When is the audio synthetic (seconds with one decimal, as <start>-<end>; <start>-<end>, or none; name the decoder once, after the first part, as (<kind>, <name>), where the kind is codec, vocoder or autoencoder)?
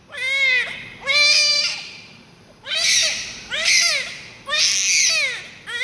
1.5-3.9 (vocoder, BigVGAN v2)